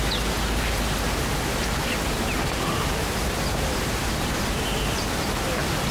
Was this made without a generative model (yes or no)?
yes